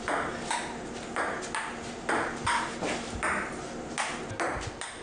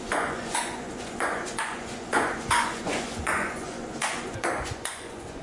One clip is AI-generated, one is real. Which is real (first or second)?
first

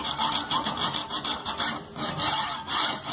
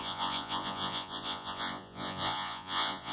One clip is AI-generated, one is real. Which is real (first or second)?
first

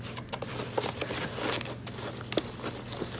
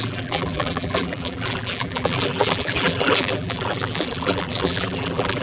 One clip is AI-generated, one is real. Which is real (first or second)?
first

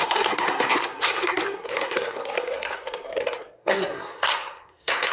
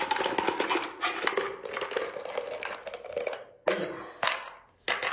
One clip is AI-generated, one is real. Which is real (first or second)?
second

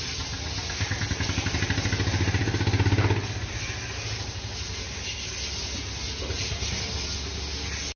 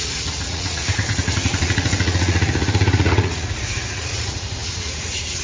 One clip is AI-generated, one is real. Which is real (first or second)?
first